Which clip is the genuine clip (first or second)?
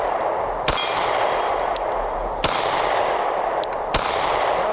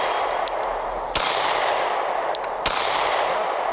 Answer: second